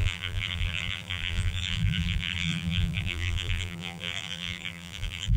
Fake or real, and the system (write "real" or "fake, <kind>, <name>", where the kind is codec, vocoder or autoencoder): fake, vocoder, BigVGAN v2